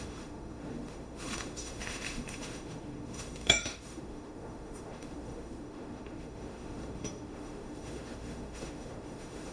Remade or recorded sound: remade